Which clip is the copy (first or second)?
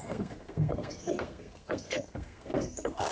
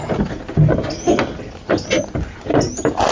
first